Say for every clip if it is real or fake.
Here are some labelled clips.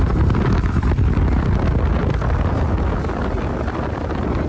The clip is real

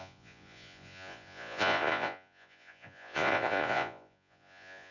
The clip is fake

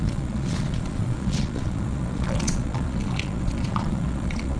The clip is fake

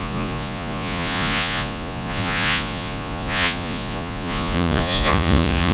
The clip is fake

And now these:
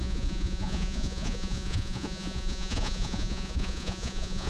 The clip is fake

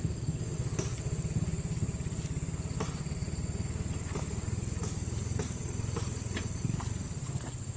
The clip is real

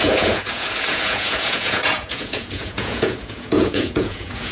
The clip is fake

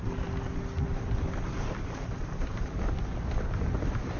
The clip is real